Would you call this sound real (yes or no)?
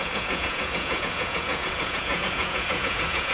no